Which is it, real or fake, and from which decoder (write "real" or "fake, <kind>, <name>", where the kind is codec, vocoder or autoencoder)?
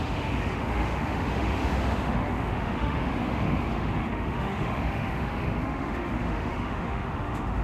fake, autoencoder, DAC-VAE